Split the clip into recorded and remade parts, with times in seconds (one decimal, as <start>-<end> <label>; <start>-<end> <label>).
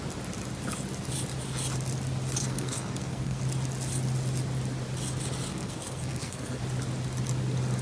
0.0-2.4 recorded; 2.4-3.4 remade; 3.4-5.5 recorded; 5.5-6.6 remade; 6.6-7.8 recorded